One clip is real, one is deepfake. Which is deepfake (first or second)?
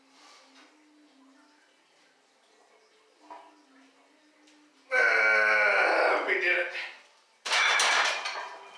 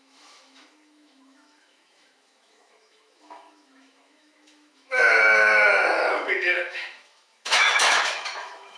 second